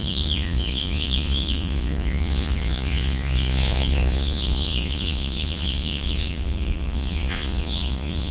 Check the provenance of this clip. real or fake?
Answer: fake